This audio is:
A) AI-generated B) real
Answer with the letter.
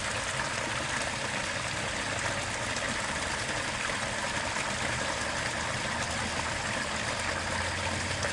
B